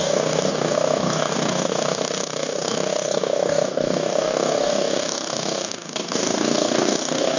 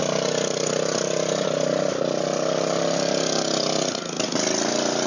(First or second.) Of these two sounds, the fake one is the first